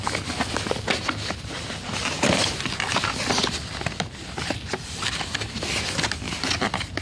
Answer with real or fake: real